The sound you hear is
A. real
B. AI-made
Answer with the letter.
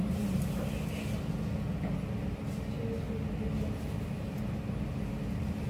A